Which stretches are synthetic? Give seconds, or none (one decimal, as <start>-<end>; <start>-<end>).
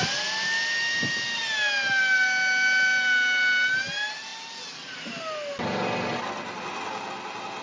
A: none